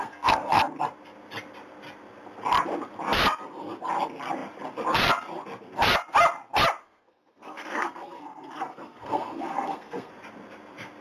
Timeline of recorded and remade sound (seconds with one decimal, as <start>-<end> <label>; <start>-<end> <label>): 0.0-0.6 remade; 0.6-6.8 recorded; 6.8-10.1 remade; 10.1-11.0 recorded